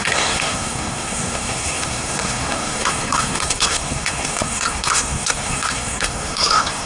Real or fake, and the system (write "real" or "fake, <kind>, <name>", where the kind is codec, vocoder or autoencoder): fake, codec, SNAC